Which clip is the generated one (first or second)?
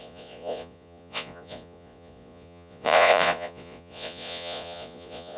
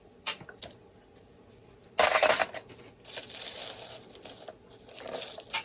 first